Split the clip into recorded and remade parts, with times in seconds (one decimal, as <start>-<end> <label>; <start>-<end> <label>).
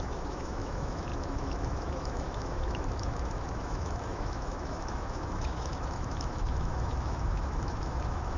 0.0-8.4 remade